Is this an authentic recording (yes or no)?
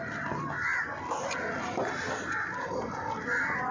yes